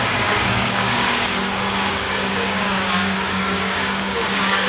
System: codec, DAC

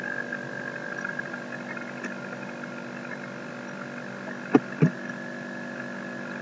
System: none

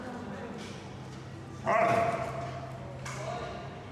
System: none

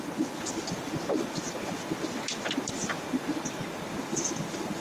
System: none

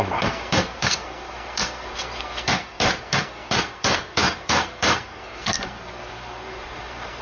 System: codec, SNAC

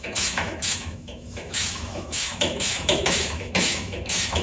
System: autoencoder, DAC-VAE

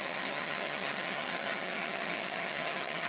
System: vocoder, HiFi-GAN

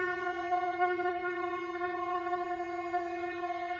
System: vocoder, HiFi-GAN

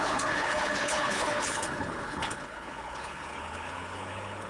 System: codec, HILCodec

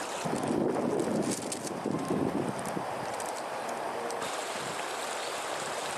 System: none